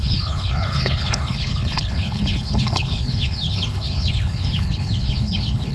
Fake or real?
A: fake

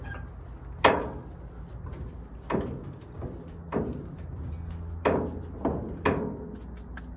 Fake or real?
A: real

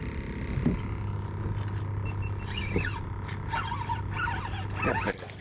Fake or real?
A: real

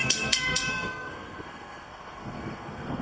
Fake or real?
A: fake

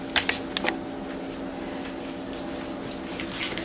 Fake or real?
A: real